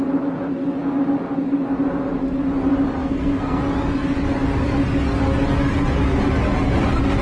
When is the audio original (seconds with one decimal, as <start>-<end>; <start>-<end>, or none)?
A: 0.0-3.0; 3.6-7.2